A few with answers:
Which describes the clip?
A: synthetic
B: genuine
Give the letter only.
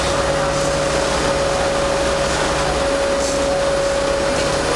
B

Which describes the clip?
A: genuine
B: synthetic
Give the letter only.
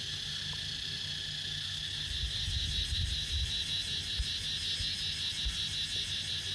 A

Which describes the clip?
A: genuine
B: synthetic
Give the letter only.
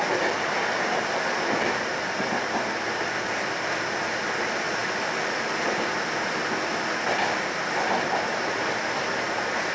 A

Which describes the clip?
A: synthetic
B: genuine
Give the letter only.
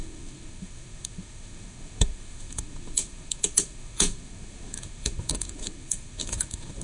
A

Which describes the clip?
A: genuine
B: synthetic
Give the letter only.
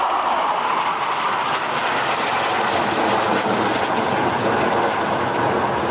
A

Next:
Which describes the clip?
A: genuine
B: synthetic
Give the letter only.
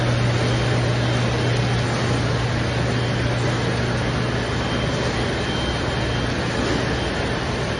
A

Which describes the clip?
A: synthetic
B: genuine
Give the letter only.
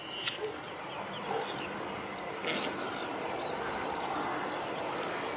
B